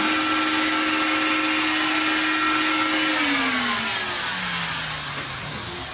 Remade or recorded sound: recorded